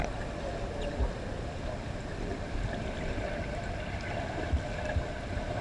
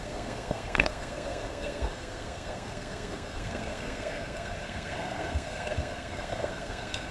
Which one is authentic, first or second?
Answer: first